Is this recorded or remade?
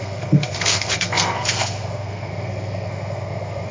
remade